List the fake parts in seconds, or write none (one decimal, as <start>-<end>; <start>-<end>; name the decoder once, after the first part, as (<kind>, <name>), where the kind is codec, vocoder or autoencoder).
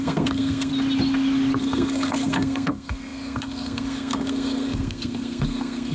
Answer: 0.0-0.7 (codec, SNAC); 1.6-5.9